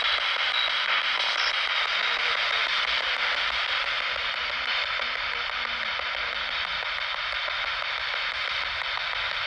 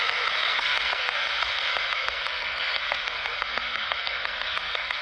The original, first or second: first